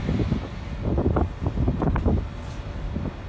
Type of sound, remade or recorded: recorded